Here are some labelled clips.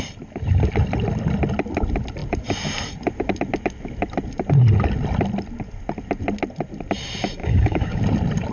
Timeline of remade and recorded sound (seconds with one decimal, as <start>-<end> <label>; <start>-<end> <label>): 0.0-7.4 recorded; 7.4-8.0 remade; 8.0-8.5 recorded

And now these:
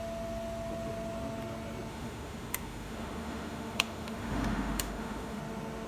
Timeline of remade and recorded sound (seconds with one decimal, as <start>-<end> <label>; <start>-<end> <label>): 0.0-1.9 recorded; 1.9-5.4 remade; 5.4-5.9 recorded

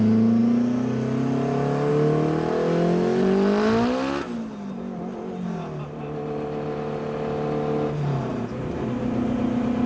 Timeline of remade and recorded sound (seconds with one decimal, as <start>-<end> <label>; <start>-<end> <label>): 0.0-9.9 recorded